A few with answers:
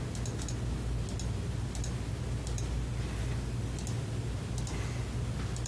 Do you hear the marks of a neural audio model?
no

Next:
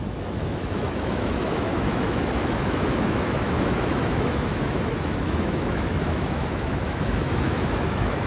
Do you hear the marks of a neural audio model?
yes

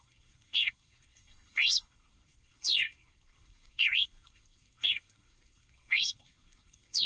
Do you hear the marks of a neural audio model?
yes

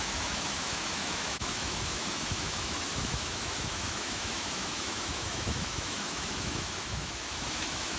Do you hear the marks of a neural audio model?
yes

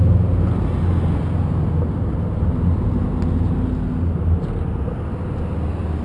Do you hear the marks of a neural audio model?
no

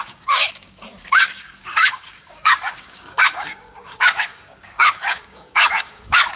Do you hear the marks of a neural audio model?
yes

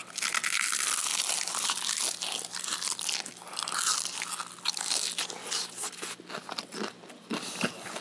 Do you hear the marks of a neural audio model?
no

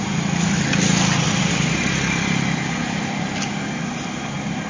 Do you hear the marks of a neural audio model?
no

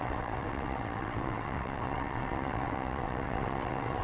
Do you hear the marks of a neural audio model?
yes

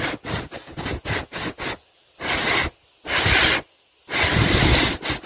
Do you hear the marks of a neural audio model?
no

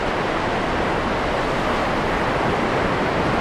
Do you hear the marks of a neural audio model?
no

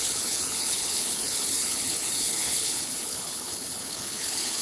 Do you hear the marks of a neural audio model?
yes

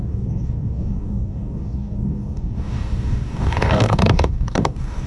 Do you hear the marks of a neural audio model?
yes